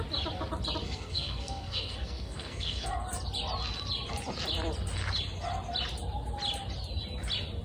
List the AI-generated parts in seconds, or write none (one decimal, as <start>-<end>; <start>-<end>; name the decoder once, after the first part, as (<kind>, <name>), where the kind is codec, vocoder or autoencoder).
0.8-2.9 (codec, SNAC)